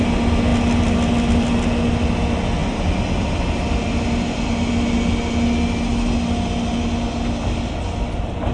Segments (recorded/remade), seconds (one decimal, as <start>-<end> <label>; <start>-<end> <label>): 0.0-8.5 recorded